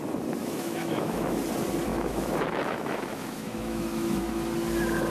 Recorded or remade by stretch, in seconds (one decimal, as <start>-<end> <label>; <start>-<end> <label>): 0.0-0.4 recorded; 0.4-1.4 remade; 1.4-1.9 recorded; 1.9-4.3 remade; 4.3-5.1 recorded